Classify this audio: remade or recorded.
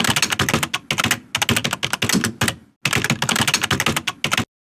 recorded